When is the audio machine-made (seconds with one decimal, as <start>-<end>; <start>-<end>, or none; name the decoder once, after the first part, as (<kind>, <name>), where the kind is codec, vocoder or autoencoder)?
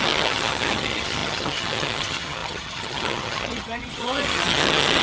0.0-5.0 (vocoder, HiFi-GAN)